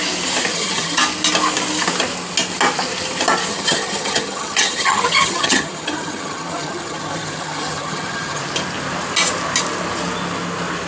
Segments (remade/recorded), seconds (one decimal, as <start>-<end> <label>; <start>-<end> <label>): 0.0-0.5 recorded; 0.5-1.0 remade; 1.0-3.5 recorded; 3.5-8.4 remade; 8.4-10.9 recorded